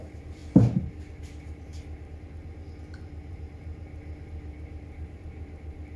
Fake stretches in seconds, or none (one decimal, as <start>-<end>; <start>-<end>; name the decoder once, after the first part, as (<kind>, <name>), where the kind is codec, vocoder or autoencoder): 0.0-0.4 (vocoder, BigVGAN v2); 1.2-4.0; 4.5-6.0